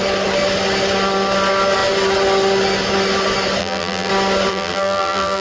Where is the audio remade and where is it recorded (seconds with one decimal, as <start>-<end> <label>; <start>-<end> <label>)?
0.0-3.6 recorded; 3.6-4.1 remade; 4.1-4.5 recorded; 4.5-5.4 remade